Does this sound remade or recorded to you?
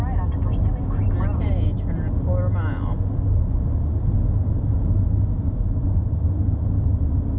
recorded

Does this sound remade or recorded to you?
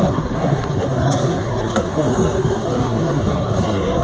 remade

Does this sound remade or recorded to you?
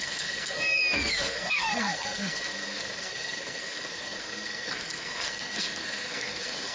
remade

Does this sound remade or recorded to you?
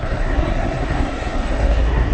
remade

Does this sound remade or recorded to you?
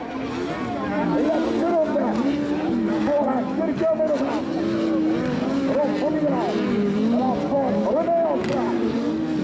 recorded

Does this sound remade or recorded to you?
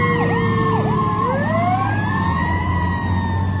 recorded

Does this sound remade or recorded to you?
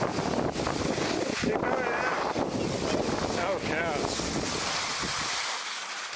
recorded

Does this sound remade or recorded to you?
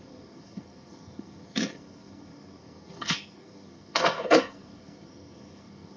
remade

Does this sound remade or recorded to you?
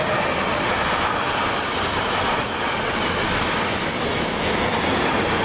recorded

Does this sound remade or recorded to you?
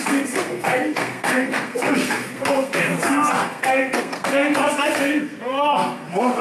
remade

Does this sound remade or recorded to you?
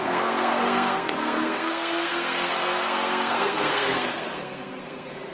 remade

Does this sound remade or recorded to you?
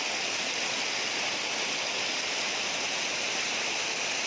recorded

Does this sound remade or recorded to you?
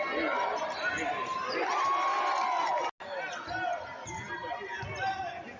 recorded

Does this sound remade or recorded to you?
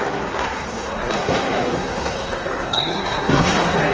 remade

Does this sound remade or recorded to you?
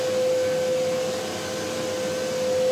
recorded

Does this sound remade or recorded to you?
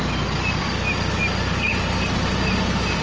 recorded